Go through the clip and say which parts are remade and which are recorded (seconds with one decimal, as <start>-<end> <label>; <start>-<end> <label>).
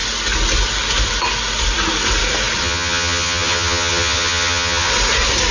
0.0-2.6 recorded; 2.6-4.9 remade; 4.9-5.5 recorded